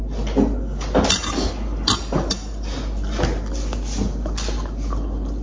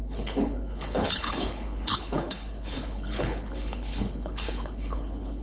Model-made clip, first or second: second